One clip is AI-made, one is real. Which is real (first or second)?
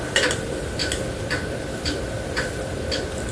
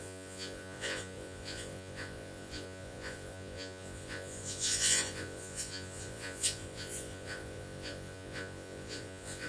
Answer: first